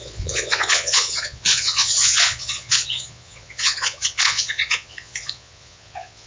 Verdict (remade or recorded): remade